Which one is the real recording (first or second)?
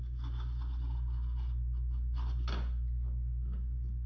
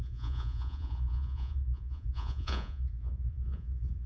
first